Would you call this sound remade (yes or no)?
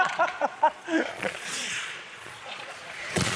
yes